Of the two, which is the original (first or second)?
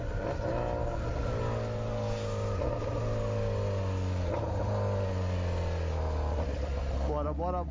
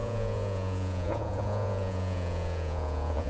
first